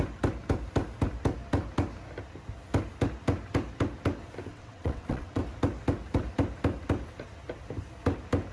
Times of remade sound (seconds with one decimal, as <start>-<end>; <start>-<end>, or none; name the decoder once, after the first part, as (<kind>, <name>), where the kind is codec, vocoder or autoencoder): 4.5-5.4 (vocoder, WaveNeXt)